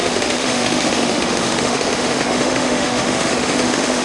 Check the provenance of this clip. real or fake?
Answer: fake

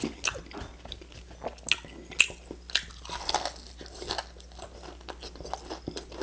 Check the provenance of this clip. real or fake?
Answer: real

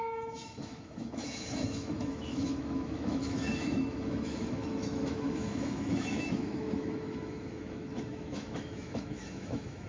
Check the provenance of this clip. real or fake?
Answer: fake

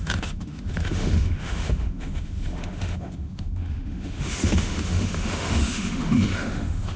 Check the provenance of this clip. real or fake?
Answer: fake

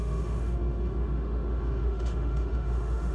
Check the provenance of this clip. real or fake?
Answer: fake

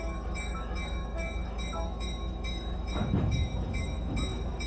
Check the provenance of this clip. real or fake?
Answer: fake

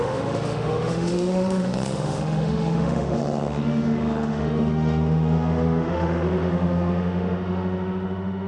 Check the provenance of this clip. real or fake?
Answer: fake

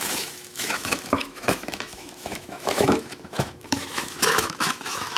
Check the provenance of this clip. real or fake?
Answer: fake